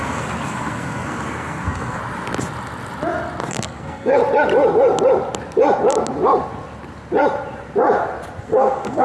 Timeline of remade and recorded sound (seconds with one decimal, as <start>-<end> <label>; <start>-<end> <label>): 0.0-2.0 remade; 2.0-3.5 recorded; 3.5-4.2 remade; 4.2-8.4 recorded; 8.4-9.0 remade